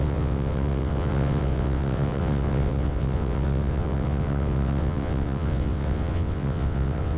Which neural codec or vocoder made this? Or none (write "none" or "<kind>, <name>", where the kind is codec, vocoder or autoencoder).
vocoder, WaveNeXt